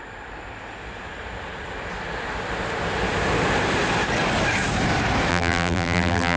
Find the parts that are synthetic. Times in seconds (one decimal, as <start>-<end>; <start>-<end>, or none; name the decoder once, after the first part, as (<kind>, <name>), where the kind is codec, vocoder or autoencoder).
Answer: 5.3-6.4 (vocoder, BigVGAN v2)

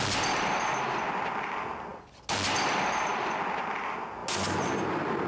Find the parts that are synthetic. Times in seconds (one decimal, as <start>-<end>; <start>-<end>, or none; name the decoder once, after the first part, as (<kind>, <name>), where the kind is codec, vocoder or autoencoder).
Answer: none

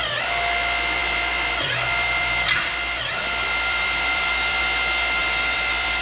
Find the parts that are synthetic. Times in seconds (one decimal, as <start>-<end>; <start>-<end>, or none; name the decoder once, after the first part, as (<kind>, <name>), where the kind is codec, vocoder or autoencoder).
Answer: 1.0-4.6 (vocoder, BigVGAN v2); 5.2-6.0

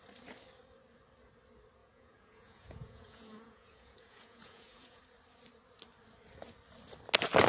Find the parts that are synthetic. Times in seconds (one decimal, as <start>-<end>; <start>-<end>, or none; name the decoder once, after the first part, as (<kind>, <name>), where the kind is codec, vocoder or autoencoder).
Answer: 1.8-5.0 (vocoder, Vocos)